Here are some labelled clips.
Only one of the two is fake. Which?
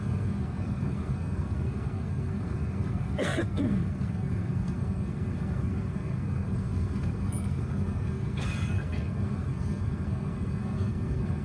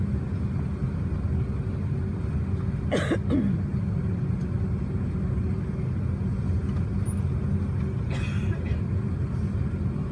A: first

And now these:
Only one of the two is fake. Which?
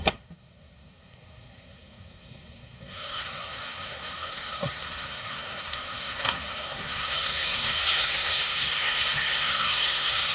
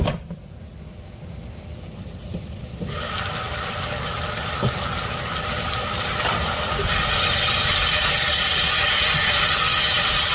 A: first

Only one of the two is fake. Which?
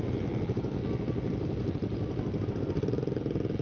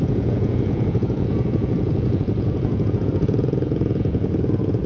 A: second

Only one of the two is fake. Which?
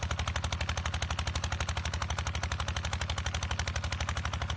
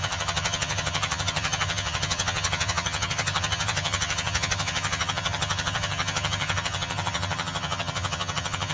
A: second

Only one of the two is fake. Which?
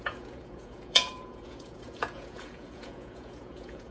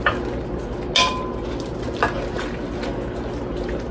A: first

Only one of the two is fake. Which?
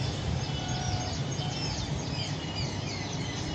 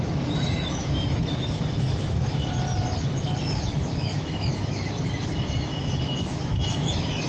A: second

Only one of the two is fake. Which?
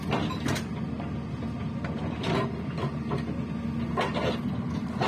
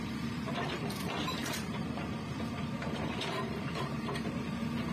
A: second